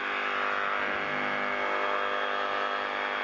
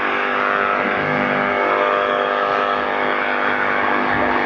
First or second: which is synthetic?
second